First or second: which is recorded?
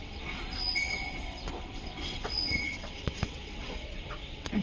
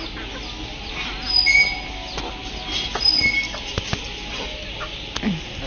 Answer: second